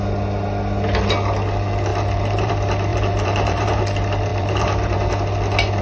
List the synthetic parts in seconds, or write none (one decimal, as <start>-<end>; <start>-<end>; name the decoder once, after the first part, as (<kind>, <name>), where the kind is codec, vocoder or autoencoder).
1.9-2.5 (vocoder, BigVGAN v2); 2.9-3.8; 4.3-5.1